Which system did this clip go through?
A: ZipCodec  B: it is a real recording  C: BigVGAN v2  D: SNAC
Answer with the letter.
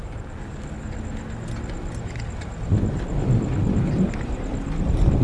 B